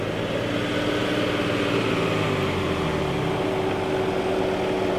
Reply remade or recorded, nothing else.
recorded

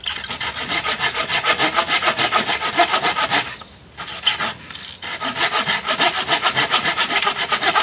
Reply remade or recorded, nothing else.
recorded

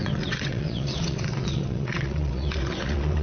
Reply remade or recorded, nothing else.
remade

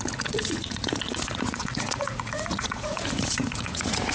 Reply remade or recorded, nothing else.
remade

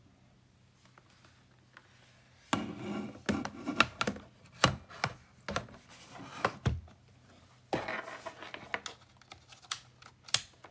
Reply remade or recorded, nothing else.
recorded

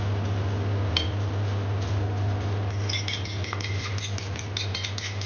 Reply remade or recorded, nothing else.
recorded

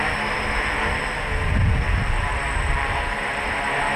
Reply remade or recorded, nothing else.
recorded